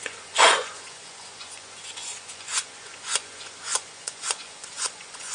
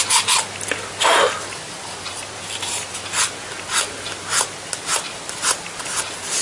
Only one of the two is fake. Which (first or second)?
first